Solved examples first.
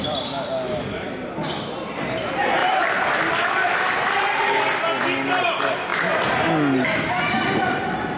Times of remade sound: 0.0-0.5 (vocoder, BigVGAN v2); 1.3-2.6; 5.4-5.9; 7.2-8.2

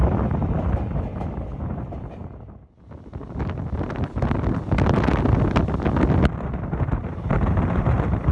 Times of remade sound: 0.0-0.4 (vocoder, BigVGAN v2); 1.7-2.2; 6.7-8.3

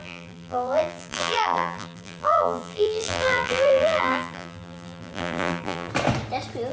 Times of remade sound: 0.0-5.9 (vocoder, BigVGAN v2)

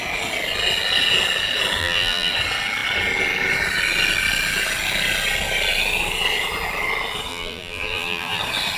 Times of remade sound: 1.8-2.3 (vocoder, BigVGAN v2); 7.3-8.4

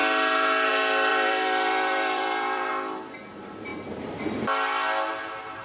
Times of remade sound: 1.1-2.7 (vocoder, BigVGAN v2)

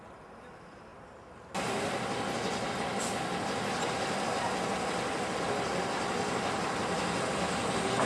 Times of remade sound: none

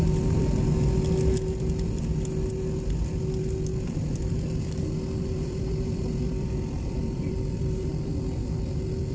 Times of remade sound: 3.7-8.1 (vocoder, BigVGAN v2)

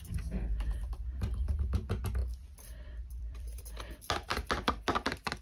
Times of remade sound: 2.2-3.6 (vocoder, BigVGAN v2)